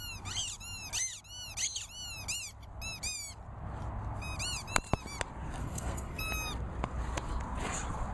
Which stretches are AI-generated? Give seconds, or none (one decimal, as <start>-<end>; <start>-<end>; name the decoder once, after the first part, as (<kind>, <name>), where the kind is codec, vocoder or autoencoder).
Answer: 5.6-6.2 (codec, SNAC)

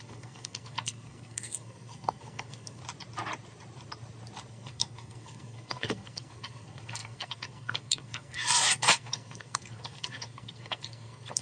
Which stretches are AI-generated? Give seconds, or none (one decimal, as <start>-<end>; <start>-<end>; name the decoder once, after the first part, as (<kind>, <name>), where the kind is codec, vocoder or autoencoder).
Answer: 0.0-2.8 (codec, SNAC); 4.5-11.4

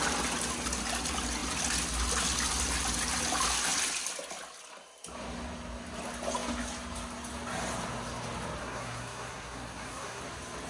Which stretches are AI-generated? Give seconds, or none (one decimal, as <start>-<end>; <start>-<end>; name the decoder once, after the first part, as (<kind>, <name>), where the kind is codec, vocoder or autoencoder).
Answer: 8.6-10.2 (codec, SNAC)

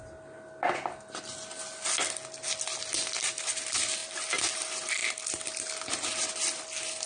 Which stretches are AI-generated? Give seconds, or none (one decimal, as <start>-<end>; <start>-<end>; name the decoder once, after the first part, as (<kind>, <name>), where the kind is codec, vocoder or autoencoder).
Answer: none